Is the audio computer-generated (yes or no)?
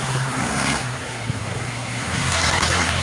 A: yes